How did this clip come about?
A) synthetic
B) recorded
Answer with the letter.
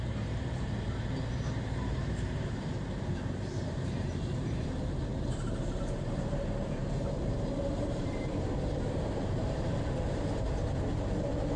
A